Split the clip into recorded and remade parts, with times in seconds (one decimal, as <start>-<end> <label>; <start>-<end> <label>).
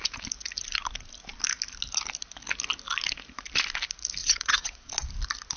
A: 0.0-4.2 recorded; 4.2-4.9 remade; 4.9-5.6 recorded